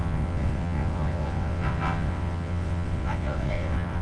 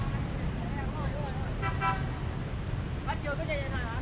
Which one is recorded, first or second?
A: second